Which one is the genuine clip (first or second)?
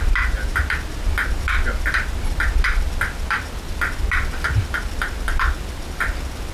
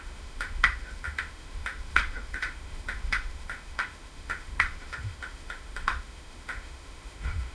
first